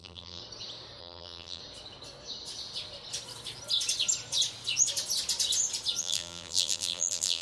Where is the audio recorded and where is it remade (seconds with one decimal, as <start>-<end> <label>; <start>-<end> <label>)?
0.0-0.4 remade; 0.4-1.0 recorded; 1.0-1.6 remade; 1.6-6.0 recorded; 6.0-7.4 remade